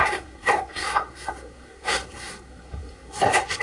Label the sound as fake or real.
fake